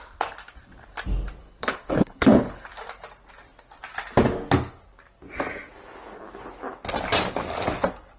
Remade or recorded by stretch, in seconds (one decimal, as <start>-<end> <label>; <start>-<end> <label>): 0.0-1.4 recorded; 1.4-2.7 remade; 2.7-8.2 recorded